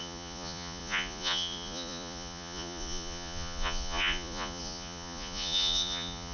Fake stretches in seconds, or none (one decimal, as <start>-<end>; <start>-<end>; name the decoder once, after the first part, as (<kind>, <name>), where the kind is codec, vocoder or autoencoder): 0.0-6.3 (vocoder, Vocos)